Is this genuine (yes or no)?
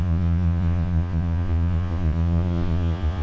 no